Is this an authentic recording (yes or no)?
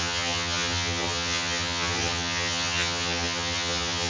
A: no